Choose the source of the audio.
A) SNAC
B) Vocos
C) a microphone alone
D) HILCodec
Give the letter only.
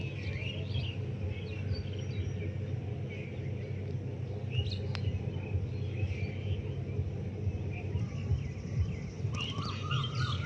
C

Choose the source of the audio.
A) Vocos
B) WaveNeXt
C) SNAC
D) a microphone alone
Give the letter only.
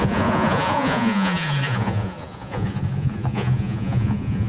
A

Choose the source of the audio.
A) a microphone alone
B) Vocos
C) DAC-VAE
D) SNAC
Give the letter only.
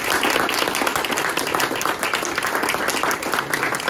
A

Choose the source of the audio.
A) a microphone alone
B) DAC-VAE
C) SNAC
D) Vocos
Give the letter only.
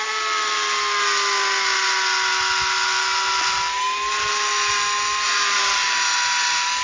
A